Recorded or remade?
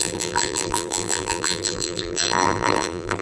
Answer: remade